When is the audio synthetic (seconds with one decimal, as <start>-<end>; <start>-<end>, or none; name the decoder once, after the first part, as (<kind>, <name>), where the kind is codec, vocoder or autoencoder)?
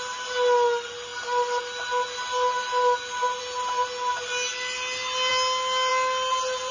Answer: none